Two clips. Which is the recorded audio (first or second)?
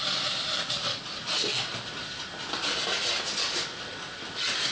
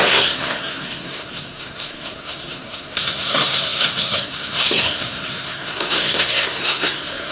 first